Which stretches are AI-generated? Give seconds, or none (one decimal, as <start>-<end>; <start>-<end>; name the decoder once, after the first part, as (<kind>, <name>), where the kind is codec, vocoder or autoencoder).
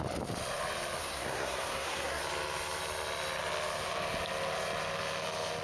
1.0-2.2 (codec, SNAC)